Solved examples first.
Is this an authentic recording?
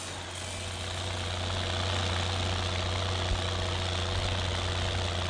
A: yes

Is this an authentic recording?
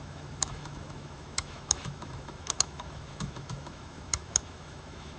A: no